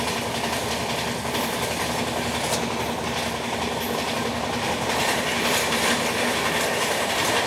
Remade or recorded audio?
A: recorded